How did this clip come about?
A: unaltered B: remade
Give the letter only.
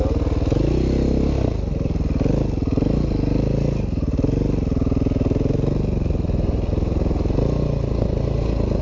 A